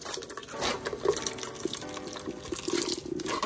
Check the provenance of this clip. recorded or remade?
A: recorded